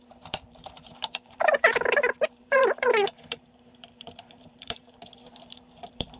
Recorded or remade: remade